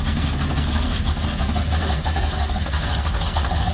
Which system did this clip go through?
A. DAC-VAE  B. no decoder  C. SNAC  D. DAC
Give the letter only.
C